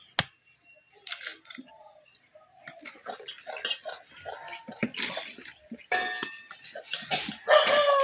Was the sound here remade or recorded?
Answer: recorded